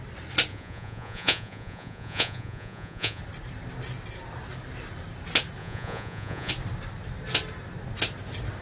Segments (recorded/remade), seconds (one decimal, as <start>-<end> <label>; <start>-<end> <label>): 0.0-0.5 recorded; 0.5-3.2 remade; 3.2-5.6 recorded; 5.6-6.5 remade; 6.5-8.6 recorded